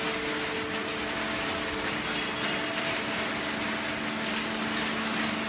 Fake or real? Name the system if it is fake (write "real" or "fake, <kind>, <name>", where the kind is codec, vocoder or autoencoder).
real